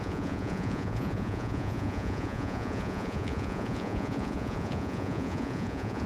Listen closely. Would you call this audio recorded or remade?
remade